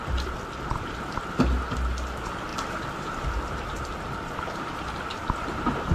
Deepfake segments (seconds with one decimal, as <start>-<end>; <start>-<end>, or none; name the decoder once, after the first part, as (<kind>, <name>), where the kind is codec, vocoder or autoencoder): 0.0-0.9 (vocoder, BigVGAN v2); 2.5-4.8